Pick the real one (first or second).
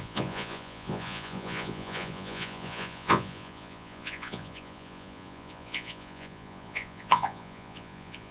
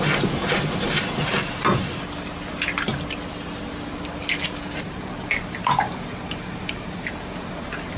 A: second